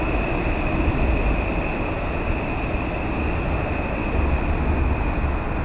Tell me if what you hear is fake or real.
real